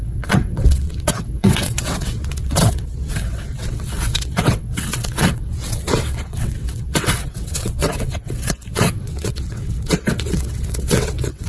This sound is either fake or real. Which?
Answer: fake